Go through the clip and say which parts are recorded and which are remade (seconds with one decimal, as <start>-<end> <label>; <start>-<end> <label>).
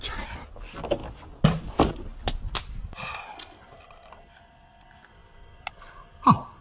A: 0.0-6.6 recorded